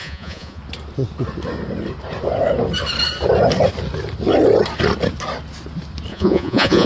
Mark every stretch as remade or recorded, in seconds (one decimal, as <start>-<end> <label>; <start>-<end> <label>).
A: 0.0-0.6 remade; 0.6-6.1 recorded; 6.1-6.9 remade